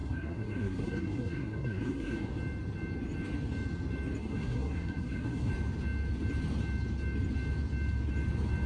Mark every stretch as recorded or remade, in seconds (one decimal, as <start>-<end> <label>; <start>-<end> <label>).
0.0-2.3 remade; 2.3-4.2 recorded; 4.2-5.5 remade; 5.5-8.7 recorded